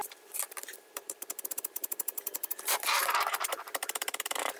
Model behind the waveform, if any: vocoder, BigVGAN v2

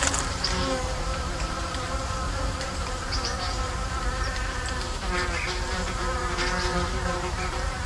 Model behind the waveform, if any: vocoder, BigVGAN v2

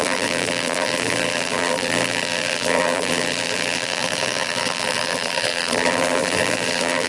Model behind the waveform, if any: vocoder, BigVGAN v2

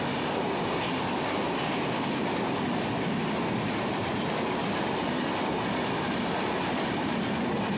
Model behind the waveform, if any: none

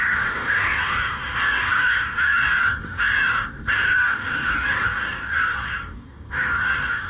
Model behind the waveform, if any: codec, DAC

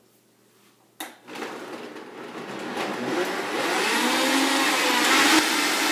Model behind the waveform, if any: none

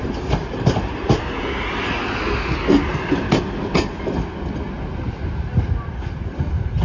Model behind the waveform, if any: none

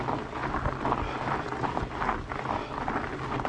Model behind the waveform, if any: none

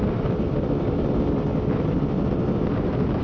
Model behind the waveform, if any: vocoder, BigVGAN v2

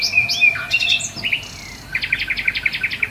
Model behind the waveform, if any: none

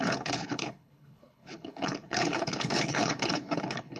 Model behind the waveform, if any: codec, HILCodec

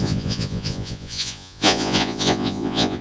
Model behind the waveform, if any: vocoder, Vocos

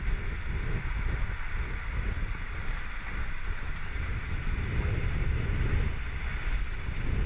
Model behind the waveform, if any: none